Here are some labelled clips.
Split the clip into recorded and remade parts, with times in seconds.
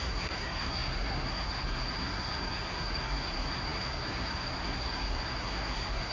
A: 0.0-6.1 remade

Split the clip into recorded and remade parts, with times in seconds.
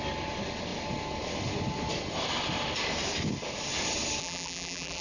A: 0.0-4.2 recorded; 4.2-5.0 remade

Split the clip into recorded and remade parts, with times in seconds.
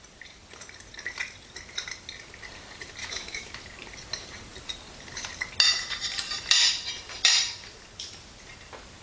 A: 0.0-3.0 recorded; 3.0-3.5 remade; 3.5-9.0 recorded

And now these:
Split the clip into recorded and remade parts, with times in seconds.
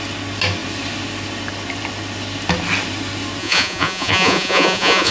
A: 0.0-3.4 recorded; 3.4-5.1 remade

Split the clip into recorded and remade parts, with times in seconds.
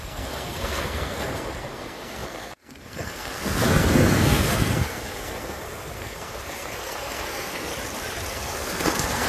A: 0.0-7.7 remade; 7.7-8.3 recorded; 8.3-9.3 remade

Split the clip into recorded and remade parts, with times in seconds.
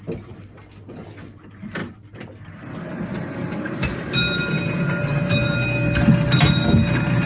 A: 0.0-7.3 recorded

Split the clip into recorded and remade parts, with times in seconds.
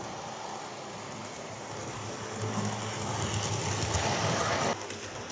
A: 0.0-5.3 recorded